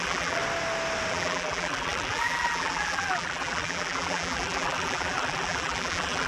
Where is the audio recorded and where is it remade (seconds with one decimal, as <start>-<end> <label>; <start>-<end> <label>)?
0.0-0.4 remade; 0.4-1.1 recorded; 1.1-6.3 remade